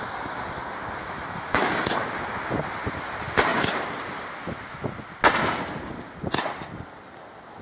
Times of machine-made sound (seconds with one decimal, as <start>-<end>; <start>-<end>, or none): 1.0-1.7